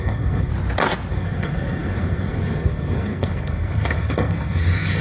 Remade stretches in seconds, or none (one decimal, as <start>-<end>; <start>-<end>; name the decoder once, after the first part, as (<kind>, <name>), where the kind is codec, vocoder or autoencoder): 0.0-0.5 (codec, SNAC); 1.1-5.0